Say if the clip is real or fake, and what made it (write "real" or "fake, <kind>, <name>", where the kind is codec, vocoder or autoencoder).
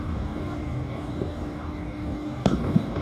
fake, codec, DAC